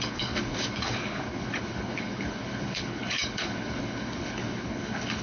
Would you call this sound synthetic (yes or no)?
yes